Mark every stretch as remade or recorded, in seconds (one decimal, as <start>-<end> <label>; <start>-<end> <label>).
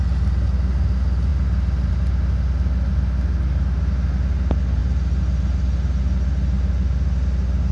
0.0-7.7 recorded